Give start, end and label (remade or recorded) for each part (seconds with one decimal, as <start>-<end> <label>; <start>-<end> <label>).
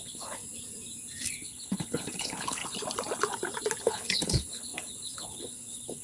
0.0-0.4 remade; 0.4-1.3 recorded; 1.3-2.6 remade; 2.6-3.8 recorded; 3.8-6.0 remade